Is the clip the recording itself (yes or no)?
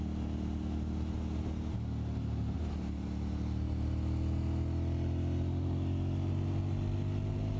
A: yes